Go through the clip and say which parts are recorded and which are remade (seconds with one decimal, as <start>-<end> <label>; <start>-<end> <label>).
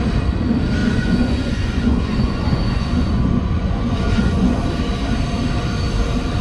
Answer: 0.0-0.8 recorded; 0.8-4.6 remade; 4.6-6.4 recorded